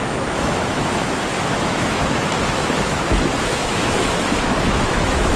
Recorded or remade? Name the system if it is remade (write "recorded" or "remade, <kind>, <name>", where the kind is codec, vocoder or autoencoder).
remade, autoencoder, DAC-VAE